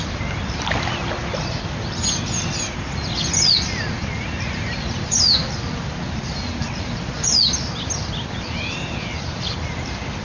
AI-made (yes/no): no